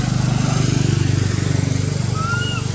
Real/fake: real